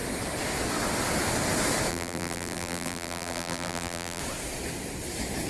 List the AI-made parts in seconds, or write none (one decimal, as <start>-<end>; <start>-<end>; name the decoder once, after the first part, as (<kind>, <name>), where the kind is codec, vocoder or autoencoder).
1.9-4.2 (vocoder, BigVGAN v2)